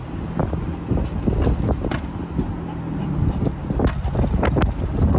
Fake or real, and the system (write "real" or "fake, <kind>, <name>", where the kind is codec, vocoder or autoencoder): real